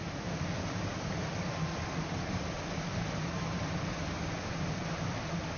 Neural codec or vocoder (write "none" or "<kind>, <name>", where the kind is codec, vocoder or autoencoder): none